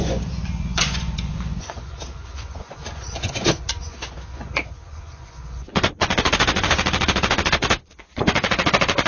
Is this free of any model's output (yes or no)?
no